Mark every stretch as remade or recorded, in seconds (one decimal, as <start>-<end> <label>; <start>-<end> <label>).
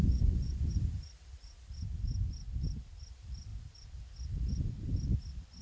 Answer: 0.0-0.7 remade; 0.7-5.6 recorded